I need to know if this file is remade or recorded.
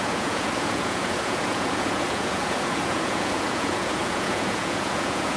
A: remade